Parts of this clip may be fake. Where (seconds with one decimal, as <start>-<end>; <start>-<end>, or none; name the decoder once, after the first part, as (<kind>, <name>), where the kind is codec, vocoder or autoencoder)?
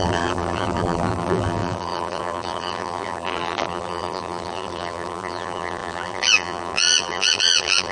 0.0-7.9 (vocoder, BigVGAN v2)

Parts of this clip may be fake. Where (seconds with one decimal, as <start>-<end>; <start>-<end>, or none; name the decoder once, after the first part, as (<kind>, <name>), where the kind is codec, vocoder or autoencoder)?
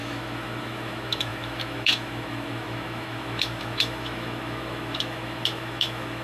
0.0-6.2 (autoencoder, DAC-VAE)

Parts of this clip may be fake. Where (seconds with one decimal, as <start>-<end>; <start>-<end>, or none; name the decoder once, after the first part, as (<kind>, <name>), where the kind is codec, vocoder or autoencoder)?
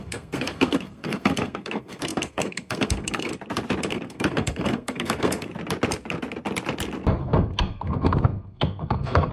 0.0-3.3 (codec, SNAC); 3.9-5.5; 7.2-9.3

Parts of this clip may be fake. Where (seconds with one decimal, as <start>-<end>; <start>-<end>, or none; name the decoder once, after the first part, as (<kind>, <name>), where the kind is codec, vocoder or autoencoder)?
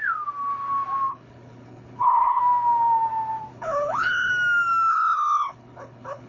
1.1-2.4 (codec, HILCodec); 3.5-4.3; 4.9-6.3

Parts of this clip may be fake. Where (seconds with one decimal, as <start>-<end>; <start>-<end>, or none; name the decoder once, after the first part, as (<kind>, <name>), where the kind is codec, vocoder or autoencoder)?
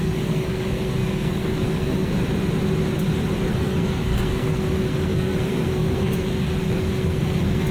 0.0-2.2 (codec, SNAC); 3.5-7.7